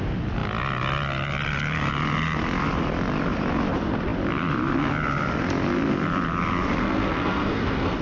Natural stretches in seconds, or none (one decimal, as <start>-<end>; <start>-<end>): 0.0-6.8